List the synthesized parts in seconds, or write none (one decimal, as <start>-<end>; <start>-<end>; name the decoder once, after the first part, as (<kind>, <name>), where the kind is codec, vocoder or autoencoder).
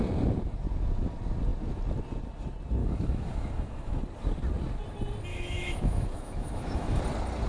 2.8-4.0 (autoencoder, DAC-VAE); 5.3-7.0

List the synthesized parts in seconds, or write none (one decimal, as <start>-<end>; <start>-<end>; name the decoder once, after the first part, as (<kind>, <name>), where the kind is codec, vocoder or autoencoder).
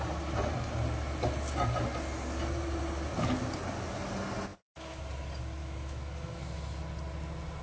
4.5-5.0 (autoencoder, DAC-VAE); 5.6-6.4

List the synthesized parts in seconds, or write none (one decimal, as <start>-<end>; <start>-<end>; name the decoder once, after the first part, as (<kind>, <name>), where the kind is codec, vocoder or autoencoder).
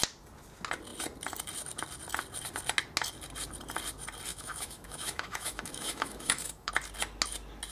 4.3-6.7 (autoencoder, DAC-VAE)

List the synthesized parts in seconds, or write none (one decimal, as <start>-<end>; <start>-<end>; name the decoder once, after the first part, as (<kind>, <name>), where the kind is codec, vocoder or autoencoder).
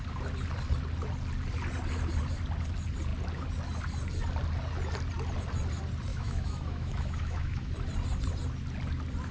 6.1-7.7 (autoencoder, DAC-VAE)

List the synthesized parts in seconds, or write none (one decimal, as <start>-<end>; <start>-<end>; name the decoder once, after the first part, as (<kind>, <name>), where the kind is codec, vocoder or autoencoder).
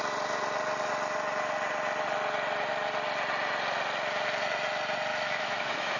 5.1-6.0 (autoencoder, DAC-VAE)